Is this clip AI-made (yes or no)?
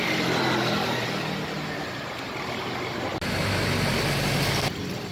no